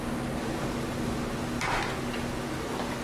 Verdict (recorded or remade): recorded